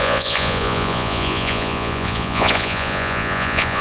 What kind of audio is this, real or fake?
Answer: fake